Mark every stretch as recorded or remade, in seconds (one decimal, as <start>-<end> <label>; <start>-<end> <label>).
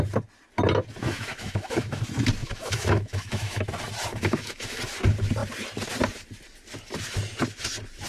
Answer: 0.0-1.0 recorded; 1.0-2.0 remade; 2.0-2.4 recorded; 2.4-3.6 remade; 3.6-4.1 recorded; 4.1-4.8 remade; 4.8-8.1 recorded